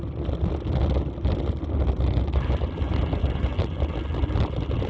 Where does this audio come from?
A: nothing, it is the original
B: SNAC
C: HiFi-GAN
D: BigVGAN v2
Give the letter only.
A